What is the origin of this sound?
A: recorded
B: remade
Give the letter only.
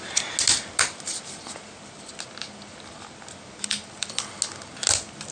A